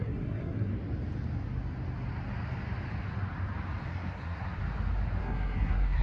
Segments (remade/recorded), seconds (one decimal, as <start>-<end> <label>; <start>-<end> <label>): 0.0-0.7 remade; 0.7-3.9 recorded; 3.9-4.6 remade; 4.6-5.2 recorded; 5.2-6.0 remade